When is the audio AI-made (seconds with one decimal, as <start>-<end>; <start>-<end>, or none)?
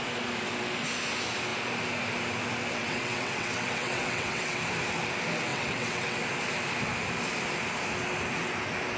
2.8-4.6; 5.5-6.2